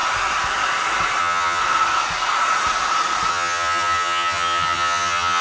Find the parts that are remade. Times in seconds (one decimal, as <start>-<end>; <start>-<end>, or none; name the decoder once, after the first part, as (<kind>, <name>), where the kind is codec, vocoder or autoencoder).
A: 1.2-1.6 (vocoder, HiFi-GAN); 3.3-5.4